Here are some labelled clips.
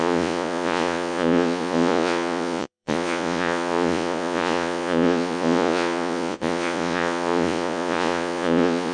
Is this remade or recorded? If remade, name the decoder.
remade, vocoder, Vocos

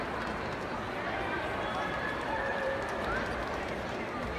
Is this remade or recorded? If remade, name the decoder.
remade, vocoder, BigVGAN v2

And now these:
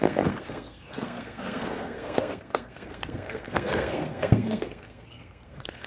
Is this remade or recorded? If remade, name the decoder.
remade, codec, SNAC